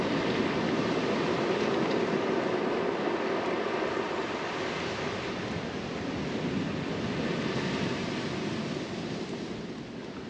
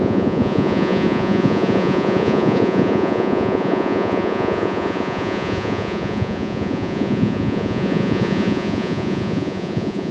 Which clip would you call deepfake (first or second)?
second